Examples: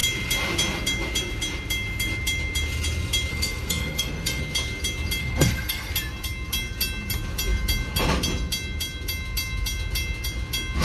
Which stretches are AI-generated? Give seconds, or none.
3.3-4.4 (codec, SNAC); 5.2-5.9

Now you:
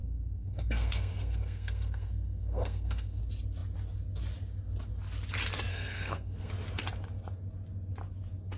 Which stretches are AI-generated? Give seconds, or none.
0.0-3.2 (codec, SNAC); 5.7-6.5